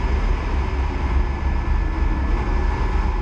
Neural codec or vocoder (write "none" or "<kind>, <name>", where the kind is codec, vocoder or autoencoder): none